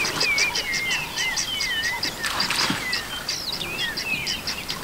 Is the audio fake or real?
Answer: real